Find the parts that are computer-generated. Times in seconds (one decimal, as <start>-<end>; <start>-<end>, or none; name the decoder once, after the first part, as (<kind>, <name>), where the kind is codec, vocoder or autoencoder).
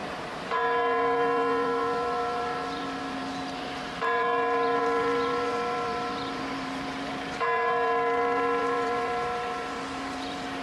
0.0-10.6 (vocoder, BigVGAN v2)